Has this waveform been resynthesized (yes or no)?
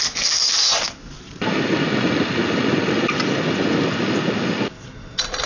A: no